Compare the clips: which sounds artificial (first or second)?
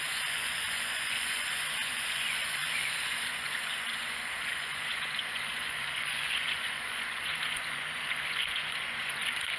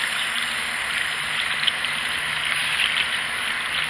first